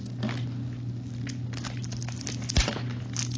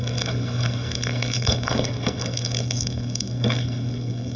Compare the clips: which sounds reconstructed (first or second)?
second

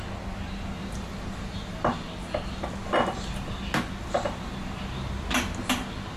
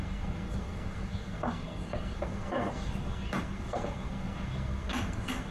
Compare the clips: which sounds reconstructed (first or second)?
second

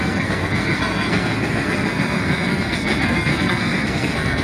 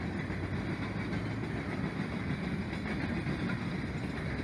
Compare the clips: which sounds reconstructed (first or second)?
first